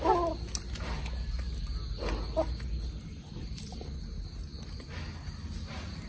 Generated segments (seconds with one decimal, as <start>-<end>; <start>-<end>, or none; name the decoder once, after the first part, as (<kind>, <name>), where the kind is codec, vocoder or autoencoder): none